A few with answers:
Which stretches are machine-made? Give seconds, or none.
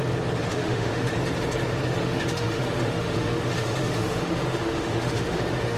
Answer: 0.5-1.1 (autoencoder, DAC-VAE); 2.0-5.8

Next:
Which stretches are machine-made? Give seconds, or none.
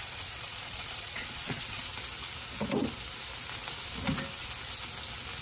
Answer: 0.0-1.9 (vocoder, Vocos)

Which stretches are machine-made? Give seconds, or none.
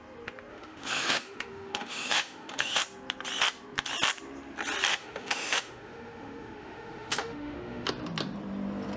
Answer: 0.5-2.8 (autoencoder, DAC-VAE); 4.9-7.9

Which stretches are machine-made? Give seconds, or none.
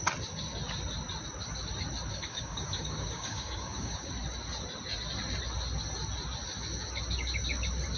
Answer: 2.1-4.1 (codec, DAC)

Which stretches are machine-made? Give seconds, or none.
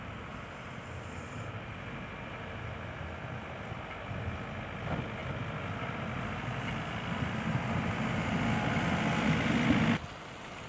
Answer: none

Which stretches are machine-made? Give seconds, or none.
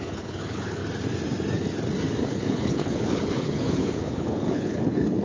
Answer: 0.0-0.8 (codec, HILCodec); 2.3-5.2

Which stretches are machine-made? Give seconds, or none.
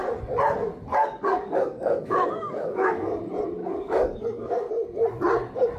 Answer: 0.9-3.2 (codec, DAC); 3.6-4.7